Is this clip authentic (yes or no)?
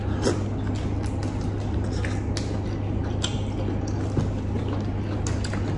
yes